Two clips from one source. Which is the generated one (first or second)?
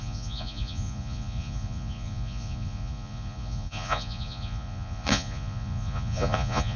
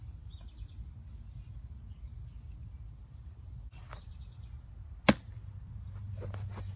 first